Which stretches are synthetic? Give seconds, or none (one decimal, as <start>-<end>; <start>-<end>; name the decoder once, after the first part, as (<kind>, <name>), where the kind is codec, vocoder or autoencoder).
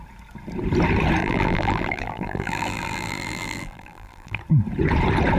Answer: 1.2-4.4 (vocoder, BigVGAN v2)